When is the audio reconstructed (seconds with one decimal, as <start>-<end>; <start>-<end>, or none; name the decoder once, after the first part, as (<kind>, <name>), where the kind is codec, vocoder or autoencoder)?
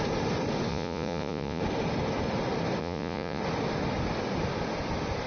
0.7-1.6 (vocoder, Vocos); 2.8-3.4